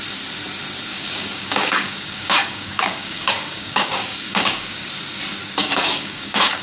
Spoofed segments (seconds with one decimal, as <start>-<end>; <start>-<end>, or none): 0.9-4.9; 5.6-6.6